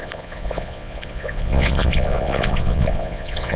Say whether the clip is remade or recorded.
remade